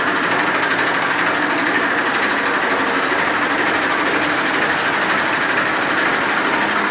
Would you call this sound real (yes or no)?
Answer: yes